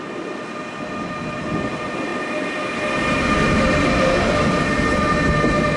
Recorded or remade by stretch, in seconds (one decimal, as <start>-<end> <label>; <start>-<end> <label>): 0.0-5.8 recorded